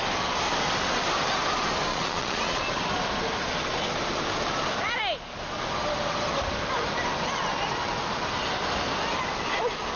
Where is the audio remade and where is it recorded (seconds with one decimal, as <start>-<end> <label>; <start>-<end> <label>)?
0.0-1.9 recorded; 1.9-2.6 remade; 2.6-10.0 recorded